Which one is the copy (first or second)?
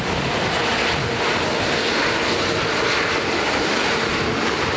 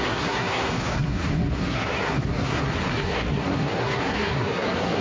second